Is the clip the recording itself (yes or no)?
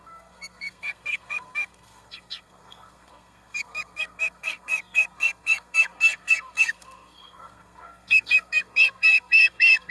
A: no